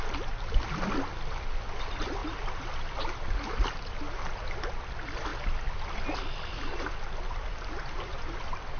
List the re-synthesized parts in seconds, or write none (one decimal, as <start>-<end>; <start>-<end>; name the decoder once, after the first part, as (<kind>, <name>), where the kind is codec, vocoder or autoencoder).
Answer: none